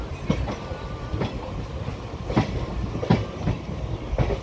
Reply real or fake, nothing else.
real